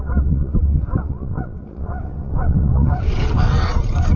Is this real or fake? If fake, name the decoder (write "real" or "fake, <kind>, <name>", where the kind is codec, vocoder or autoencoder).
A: fake, vocoder, WaveNeXt